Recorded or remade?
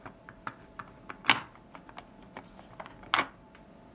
recorded